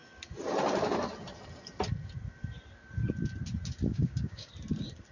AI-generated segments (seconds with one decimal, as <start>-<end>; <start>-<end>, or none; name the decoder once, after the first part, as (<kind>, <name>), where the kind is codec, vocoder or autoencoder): 3.9-4.5 (codec, DAC)